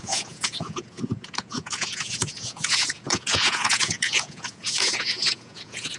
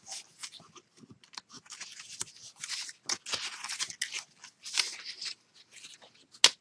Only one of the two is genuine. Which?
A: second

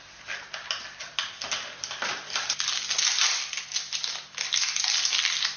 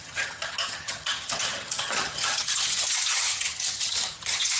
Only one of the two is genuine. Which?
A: first